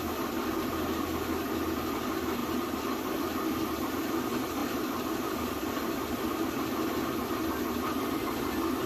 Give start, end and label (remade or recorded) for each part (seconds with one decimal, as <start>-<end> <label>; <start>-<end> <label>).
0.0-2.4 recorded; 2.4-3.9 remade; 3.9-4.6 recorded; 4.6-6.5 remade; 6.5-8.9 recorded